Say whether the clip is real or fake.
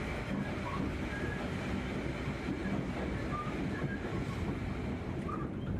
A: real